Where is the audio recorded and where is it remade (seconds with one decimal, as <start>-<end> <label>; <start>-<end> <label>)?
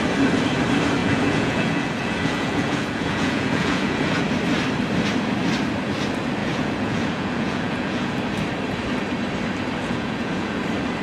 0.0-1.0 recorded; 1.0-4.2 remade; 4.2-6.4 recorded; 6.4-8.2 remade; 8.2-9.8 recorded; 9.8-10.6 remade; 10.6-11.0 recorded